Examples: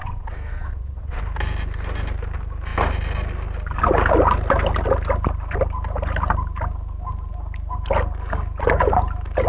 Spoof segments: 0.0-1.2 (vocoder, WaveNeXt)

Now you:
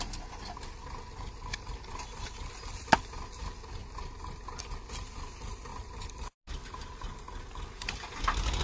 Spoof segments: none

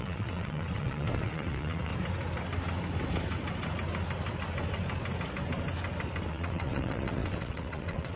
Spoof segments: 0.0-1.9 (vocoder, WaveNeXt); 6.3-8.2

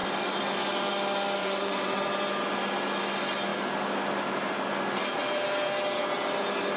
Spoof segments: 1.4-2.0 (vocoder, WaveNeXt)